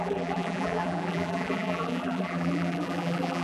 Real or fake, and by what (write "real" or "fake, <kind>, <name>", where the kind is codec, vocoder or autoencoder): fake, vocoder, BigVGAN v2